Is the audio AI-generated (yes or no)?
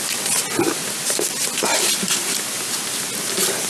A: no